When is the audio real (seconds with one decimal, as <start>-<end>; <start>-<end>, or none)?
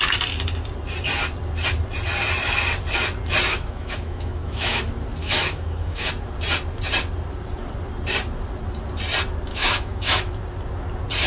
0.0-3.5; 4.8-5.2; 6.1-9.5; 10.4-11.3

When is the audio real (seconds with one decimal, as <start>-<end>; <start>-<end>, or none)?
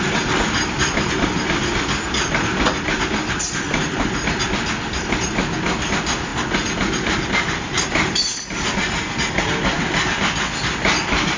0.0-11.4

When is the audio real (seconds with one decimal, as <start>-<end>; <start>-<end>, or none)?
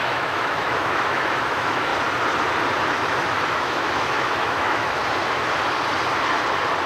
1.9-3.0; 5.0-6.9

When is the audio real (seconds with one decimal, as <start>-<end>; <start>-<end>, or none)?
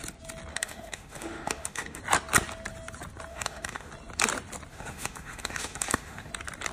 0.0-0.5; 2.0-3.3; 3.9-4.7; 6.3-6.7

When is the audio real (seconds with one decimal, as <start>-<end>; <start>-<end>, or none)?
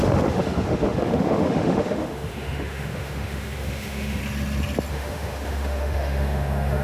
4.2-4.9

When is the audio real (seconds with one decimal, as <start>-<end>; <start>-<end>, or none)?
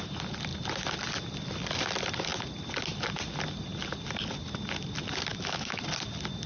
0.0-5.3; 5.8-6.5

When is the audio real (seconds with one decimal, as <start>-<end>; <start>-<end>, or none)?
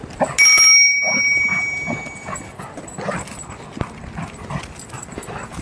0.0-5.6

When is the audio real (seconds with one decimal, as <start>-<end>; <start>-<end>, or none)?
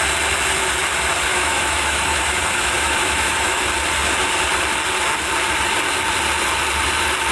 0.0-1.3; 3.6-7.3